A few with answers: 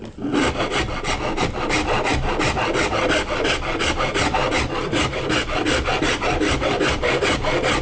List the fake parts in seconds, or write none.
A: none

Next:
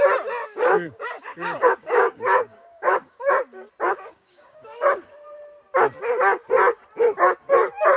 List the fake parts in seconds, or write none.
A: 0.4-3.3 (codec, DAC); 3.9-5.1

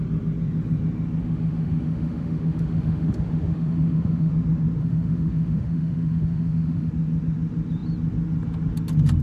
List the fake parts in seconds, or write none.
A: 1.2-4.3 (autoencoder, DAC-VAE); 4.8-6.9

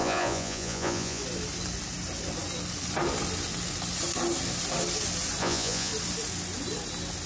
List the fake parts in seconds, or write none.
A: 0.0-1.2 (vocoder, Vocos); 5.4-5.9

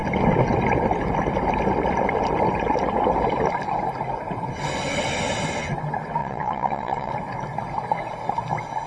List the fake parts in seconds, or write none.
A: 6.2-7.1 (vocoder, WaveNeXt)